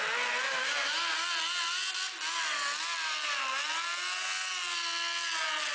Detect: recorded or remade recorded